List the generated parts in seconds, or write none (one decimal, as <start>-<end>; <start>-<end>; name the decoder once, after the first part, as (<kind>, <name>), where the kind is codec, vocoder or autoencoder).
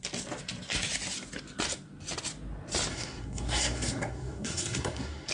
2.9-5.3 (codec, SNAC)